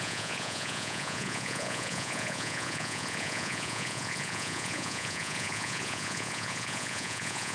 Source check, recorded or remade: remade